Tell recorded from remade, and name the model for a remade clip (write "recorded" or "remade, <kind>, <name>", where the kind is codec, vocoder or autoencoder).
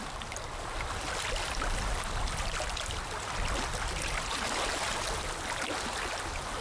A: recorded